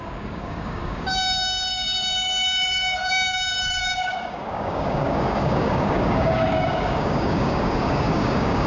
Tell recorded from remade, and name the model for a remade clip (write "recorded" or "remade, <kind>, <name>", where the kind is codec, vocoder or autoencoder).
remade, codec, DAC